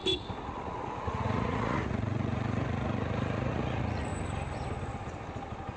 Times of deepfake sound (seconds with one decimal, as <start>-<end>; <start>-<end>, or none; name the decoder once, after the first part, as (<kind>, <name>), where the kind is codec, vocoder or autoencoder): 0.0-4.1 (vocoder, Vocos)

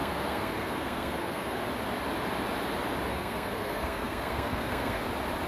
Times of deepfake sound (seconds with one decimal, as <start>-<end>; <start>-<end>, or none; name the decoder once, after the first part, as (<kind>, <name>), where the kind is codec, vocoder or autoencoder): 0.0-1.6 (codec, SNAC); 3.1-5.1

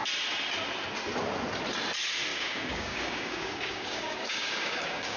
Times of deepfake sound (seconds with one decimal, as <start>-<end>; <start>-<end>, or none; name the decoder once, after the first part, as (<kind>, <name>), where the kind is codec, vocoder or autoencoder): 2.3-5.2 (codec, DAC)

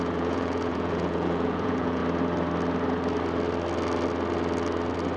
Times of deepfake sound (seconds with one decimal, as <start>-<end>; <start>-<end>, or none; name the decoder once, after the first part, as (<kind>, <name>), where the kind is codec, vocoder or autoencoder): 0.0-2.0 (vocoder, Vocos)

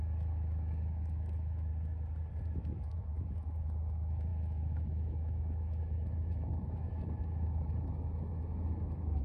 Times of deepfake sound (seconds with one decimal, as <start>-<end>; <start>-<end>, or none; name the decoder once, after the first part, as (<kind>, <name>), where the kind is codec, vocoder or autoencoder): 0.0-1.7 (autoencoder, DAC-VAE); 2.4-9.2